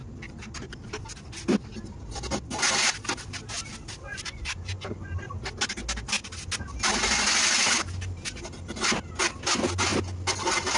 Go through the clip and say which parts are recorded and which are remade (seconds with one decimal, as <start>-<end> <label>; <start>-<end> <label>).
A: 0.0-4.1 recorded; 4.1-5.1 remade; 5.1-10.8 recorded

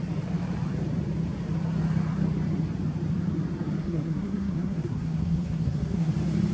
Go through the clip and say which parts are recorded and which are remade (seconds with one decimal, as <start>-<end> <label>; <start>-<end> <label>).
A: 0.0-3.8 recorded; 3.8-6.1 remade; 6.1-6.5 recorded

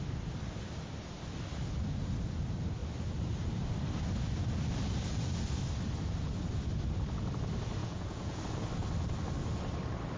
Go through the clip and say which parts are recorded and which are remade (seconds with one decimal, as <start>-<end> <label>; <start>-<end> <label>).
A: 0.0-7.8 recorded; 7.8-8.4 remade; 8.4-10.2 recorded